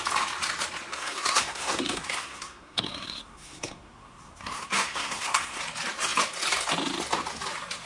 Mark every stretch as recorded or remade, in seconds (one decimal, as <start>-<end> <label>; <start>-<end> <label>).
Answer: 0.0-0.9 recorded; 0.9-5.6 remade; 5.6-7.9 recorded